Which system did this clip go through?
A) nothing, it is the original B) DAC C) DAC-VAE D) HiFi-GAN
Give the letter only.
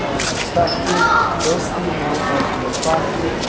A